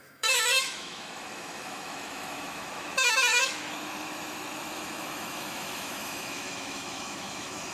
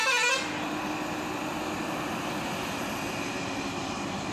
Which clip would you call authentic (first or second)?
second